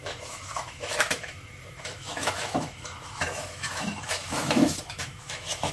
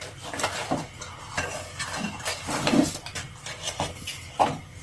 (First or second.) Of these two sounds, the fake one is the first